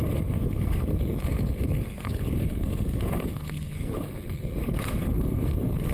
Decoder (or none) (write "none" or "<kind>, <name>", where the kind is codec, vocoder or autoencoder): codec, SNAC